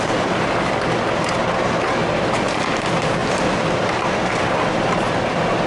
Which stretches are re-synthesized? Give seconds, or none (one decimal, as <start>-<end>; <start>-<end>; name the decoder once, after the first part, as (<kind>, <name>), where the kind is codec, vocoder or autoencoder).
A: none